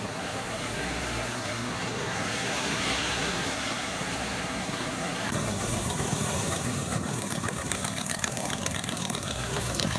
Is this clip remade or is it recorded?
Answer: remade